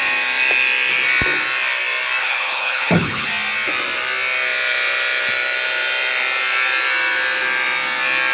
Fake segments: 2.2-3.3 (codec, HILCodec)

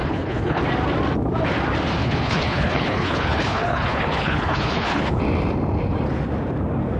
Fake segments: 0.0-0.6 (codec, HILCodec); 2.0-5.2

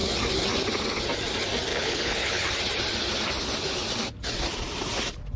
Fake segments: 1.7-2.5 (codec, HILCodec)

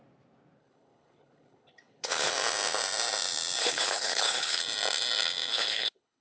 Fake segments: 0.6-2.3 (codec, HILCodec); 3.6-4.6; 5.5-6.2

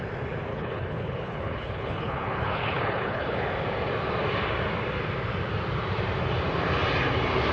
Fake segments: 0.5-3.4 (codec, HILCodec)

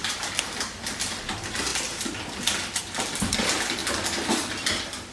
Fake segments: none